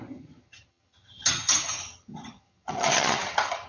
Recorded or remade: remade